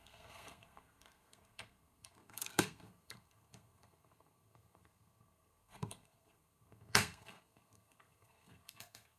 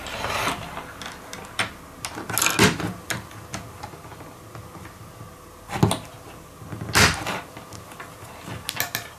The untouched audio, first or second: second